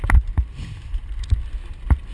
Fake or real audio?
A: real